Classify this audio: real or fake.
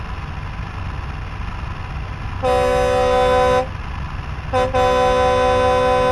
real